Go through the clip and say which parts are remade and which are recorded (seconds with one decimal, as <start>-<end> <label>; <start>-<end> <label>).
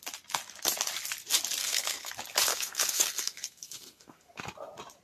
0.0-1.6 recorded; 1.6-2.1 remade; 2.1-2.5 recorded; 2.5-4.4 remade; 4.4-5.0 recorded